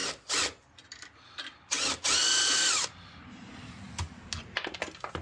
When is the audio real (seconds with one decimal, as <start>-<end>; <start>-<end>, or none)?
0.0-5.2